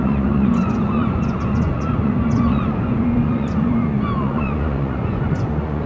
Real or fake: fake